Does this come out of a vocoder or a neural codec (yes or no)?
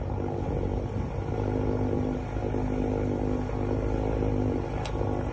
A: no